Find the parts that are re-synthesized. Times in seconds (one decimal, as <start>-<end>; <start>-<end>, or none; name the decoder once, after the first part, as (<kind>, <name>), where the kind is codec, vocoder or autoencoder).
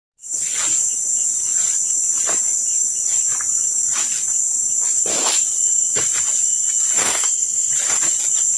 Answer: 7.0-7.7 (codec, SNAC)